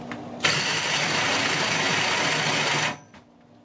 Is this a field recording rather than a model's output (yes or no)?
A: yes